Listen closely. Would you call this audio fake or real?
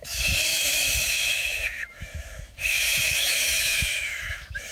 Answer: fake